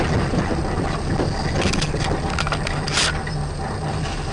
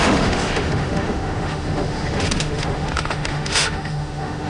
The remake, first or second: second